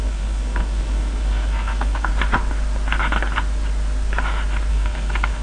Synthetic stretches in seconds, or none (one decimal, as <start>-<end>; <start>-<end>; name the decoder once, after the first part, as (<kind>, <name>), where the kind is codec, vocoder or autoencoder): 0.0-2.1 (codec, SNAC); 4.7-5.4